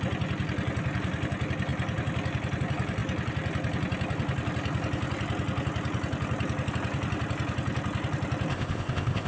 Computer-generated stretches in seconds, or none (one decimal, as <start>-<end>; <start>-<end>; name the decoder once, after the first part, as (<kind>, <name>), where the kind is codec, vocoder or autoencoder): 8.5-9.3 (codec, ZipCodec)

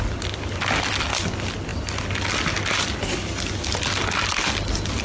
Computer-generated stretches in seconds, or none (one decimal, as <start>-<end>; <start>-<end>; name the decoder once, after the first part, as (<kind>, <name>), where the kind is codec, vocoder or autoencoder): none